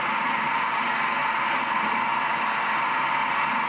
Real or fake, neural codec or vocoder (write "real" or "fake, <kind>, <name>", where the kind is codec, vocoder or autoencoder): real